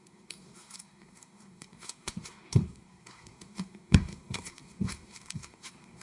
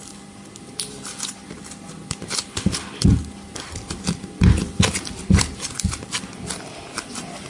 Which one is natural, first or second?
second